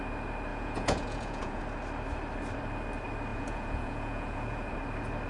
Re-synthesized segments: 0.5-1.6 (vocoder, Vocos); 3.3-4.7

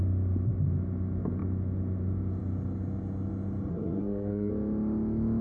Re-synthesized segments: 3.7-4.5 (codec, SNAC)

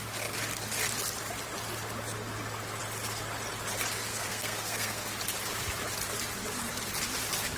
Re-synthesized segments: 4.1-5.1 (codec, SNAC)

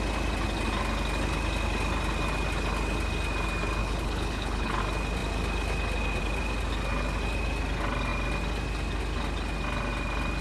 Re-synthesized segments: 3.8-4.8 (codec, HILCodec)

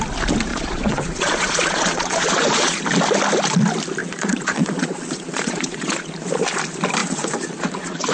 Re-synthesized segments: 0.5-2.8 (vocoder, Vocos); 4.0-6.1; 7.0-8.1

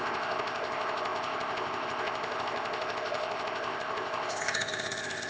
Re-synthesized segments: 0.0-5.3 (codec, ZipCodec)

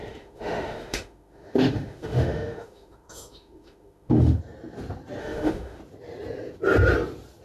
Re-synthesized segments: 0.0-4.4 (autoencoder, DAC-VAE); 5.2-5.8

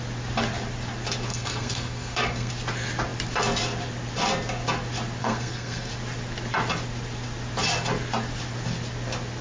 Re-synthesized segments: 1.3-2.5 (codec, SNAC); 5.2-5.9